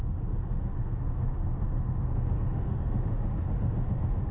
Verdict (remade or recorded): remade